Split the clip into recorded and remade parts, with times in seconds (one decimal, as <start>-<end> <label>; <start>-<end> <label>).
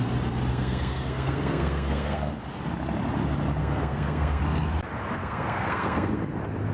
0.0-0.5 recorded; 0.5-2.3 remade; 2.3-3.6 recorded; 3.6-4.4 remade; 4.4-5.2 recorded; 5.2-6.2 remade; 6.2-6.7 recorded